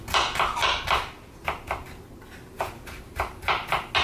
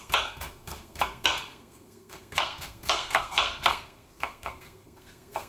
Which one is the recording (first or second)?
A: first